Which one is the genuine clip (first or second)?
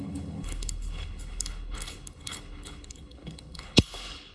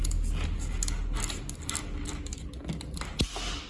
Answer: second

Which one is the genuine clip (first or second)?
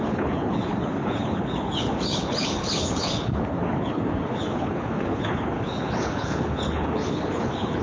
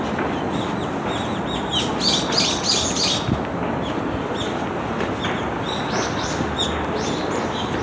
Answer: second